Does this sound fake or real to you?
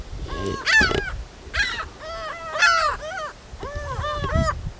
real